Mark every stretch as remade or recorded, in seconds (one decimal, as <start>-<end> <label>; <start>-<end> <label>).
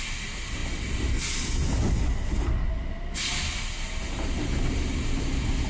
0.0-5.7 recorded